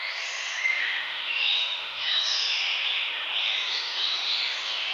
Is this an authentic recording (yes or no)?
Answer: no